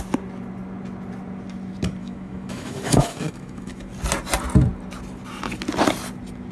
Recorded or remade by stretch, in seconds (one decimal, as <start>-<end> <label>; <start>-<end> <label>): 0.0-2.0 recorded; 2.0-3.9 remade; 3.9-6.5 recorded